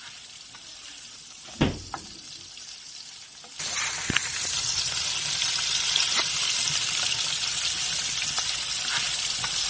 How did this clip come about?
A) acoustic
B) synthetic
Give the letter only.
A